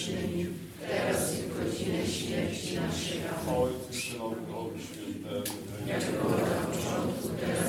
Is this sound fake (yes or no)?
yes